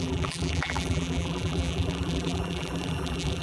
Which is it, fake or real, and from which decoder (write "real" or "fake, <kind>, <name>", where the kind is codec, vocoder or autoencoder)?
fake, vocoder, BigVGAN v2